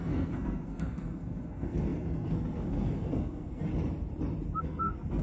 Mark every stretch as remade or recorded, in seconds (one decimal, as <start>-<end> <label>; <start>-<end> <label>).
0.0-3.7 remade; 3.7-4.6 recorded; 4.6-5.2 remade